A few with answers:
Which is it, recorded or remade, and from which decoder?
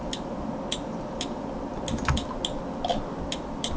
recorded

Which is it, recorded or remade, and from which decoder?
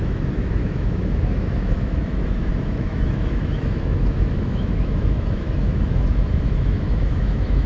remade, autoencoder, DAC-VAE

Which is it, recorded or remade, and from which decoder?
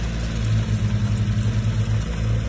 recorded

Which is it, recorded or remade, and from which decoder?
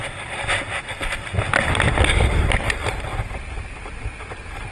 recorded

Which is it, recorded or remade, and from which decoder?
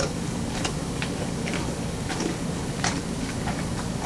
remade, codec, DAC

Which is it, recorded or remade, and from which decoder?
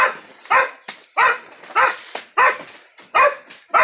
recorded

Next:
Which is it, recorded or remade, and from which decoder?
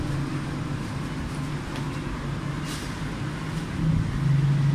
recorded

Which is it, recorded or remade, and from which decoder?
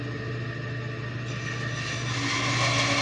recorded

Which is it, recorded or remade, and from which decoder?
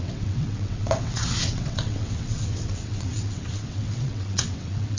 remade, vocoder, WaveNeXt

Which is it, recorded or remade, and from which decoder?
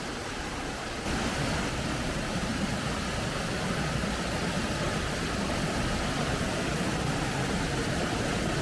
recorded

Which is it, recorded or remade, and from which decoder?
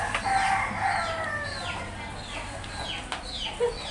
recorded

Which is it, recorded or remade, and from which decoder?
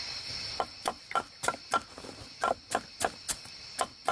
recorded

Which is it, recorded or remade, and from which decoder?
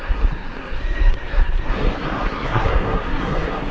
remade, codec, SNAC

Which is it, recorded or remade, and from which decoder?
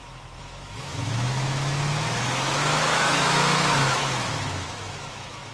remade, autoencoder, DAC-VAE